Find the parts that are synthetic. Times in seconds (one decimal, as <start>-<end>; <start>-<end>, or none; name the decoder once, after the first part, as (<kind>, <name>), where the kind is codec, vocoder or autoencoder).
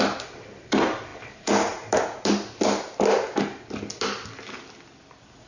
none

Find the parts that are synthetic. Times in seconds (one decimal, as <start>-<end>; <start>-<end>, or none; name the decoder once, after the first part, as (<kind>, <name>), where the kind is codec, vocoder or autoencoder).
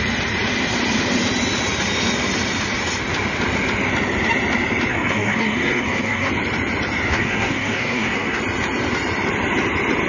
4.9-6.3 (codec, SNAC); 7.1-8.4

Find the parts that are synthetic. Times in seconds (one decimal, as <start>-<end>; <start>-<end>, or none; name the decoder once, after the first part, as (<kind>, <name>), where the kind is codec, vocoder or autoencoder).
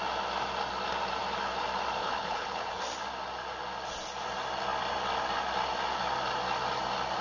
2.0-2.8 (codec, HILCodec)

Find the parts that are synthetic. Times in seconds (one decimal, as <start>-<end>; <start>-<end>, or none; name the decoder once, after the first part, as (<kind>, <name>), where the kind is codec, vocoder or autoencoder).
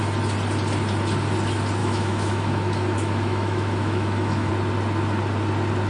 1.8-4.5 (autoencoder, DAC-VAE)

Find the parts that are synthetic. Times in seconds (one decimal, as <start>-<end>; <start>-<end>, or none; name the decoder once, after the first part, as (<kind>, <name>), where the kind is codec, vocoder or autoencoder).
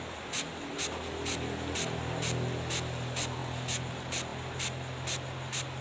none